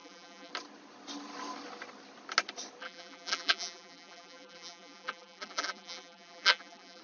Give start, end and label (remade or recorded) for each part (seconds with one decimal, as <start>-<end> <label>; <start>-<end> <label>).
0.0-0.5 remade; 0.5-2.8 recorded; 2.8-7.0 remade